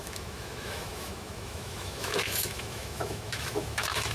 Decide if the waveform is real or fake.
fake